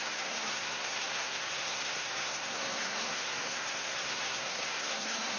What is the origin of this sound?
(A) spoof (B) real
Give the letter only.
A